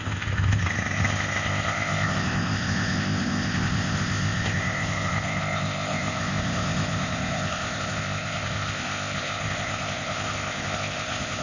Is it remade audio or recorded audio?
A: remade